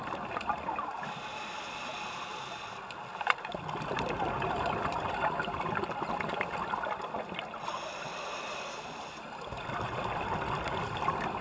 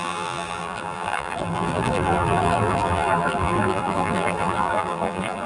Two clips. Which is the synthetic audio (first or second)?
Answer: second